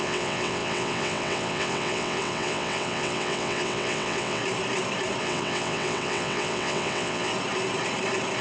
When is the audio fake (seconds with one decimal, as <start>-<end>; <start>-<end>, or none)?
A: 0.0-4.4; 5.2-7.3